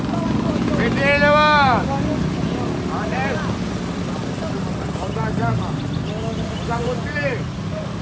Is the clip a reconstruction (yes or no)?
no